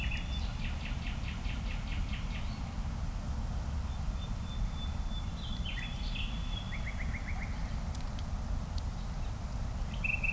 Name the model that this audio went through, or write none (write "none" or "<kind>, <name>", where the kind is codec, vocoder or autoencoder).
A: none